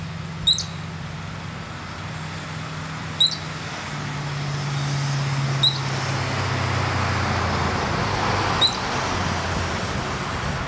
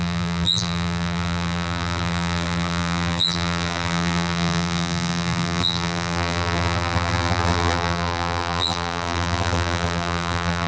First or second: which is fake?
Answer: second